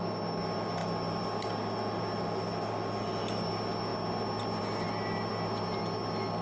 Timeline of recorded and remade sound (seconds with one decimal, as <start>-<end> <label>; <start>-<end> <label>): 0.0-6.4 recorded